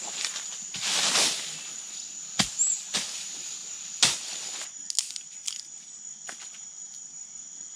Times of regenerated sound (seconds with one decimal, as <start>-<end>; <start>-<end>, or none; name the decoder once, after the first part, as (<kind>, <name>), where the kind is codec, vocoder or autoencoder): none